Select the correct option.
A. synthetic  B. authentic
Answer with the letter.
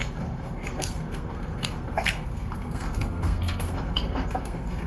A